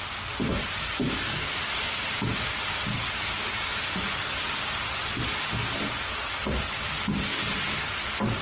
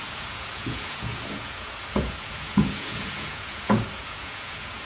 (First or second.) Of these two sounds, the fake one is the second